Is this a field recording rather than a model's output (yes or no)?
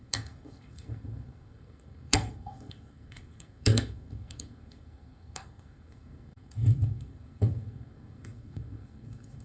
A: no